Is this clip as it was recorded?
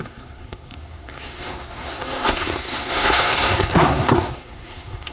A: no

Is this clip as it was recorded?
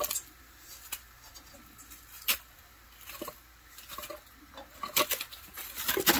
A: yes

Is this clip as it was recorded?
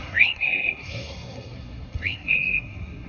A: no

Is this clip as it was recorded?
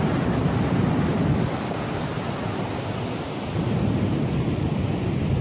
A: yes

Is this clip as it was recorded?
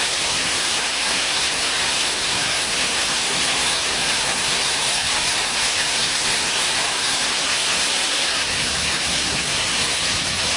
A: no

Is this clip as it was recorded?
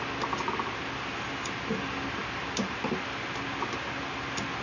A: yes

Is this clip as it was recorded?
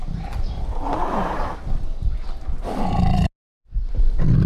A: yes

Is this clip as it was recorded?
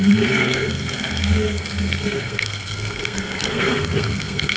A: no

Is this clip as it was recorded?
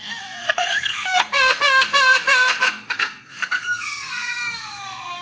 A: no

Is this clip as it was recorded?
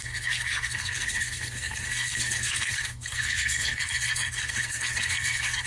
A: no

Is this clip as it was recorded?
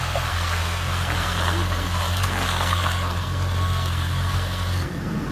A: no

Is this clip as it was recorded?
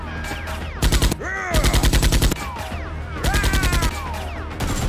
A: yes